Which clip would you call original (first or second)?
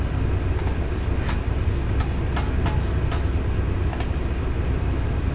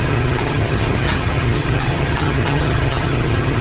first